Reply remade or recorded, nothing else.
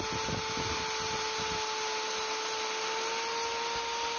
recorded